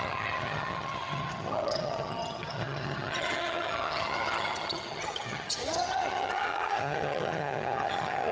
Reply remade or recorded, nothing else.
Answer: remade